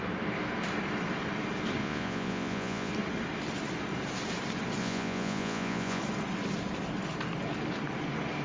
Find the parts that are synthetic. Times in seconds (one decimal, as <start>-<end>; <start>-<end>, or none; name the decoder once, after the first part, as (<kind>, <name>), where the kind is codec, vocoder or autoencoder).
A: 1.8-2.9 (vocoder, Vocos); 4.8-6.0